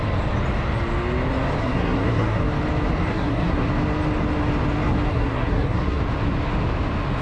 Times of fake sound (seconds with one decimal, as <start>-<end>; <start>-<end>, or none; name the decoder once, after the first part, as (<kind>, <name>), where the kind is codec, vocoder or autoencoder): 1.6-2.4 (codec, SNAC); 3.1-3.7; 5.1-6.0